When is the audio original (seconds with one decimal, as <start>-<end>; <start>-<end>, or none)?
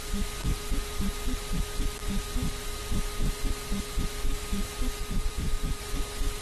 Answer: 0.0-5.0; 5.8-6.4